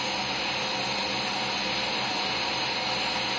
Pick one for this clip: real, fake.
real